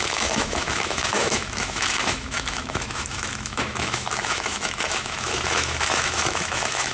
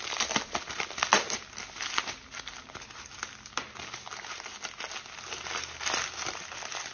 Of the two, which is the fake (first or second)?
first